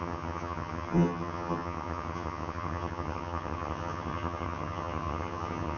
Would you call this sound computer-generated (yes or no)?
yes